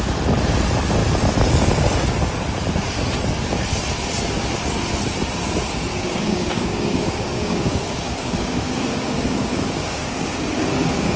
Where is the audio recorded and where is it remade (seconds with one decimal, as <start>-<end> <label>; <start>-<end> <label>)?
0.0-5.9 recorded; 5.9-11.2 remade